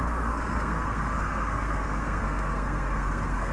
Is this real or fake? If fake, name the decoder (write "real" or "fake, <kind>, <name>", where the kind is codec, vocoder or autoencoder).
fake, codec, SNAC